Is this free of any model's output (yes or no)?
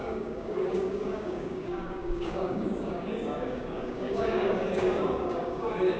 no